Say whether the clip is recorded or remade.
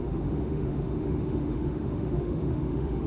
remade